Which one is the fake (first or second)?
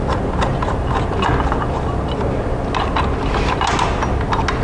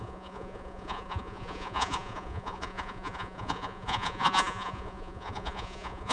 second